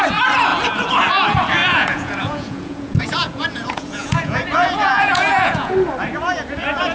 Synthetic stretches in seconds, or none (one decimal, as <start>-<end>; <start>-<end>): 1.6-5.7